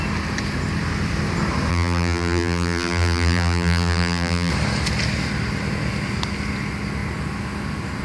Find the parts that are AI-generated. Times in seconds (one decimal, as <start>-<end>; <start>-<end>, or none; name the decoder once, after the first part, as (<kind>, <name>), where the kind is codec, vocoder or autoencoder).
1.7-4.5 (vocoder, BigVGAN v2)